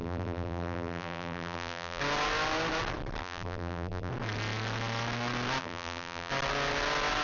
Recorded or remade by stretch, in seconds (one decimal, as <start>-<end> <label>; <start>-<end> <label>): 0.0-2.0 remade; 2.0-3.2 recorded; 3.2-4.1 remade; 4.1-5.6 recorded; 5.6-6.3 remade; 6.3-7.2 recorded